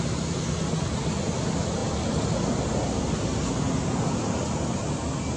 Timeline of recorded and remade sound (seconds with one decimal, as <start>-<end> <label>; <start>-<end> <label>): 0.0-5.4 recorded